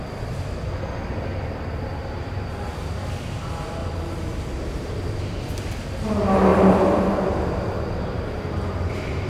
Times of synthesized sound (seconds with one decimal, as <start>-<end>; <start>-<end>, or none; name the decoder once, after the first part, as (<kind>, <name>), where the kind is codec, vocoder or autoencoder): 3.8-5.5 (vocoder, BigVGAN v2); 6.5-9.3